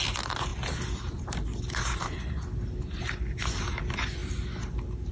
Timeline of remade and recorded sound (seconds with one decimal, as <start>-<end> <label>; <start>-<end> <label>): 0.0-5.1 recorded